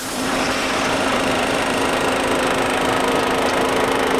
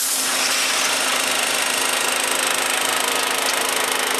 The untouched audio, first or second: second